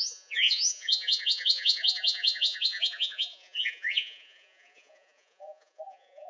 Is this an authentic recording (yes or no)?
no